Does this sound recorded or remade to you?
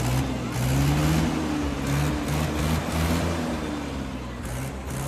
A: recorded